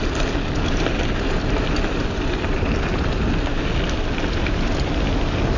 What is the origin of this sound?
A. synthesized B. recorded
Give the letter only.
B